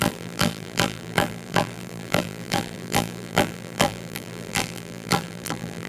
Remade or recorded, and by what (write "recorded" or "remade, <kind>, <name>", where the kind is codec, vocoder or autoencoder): remade, vocoder, BigVGAN v2